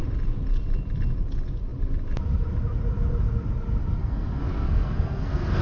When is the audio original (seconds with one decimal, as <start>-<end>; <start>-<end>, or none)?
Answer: 0.0-4.0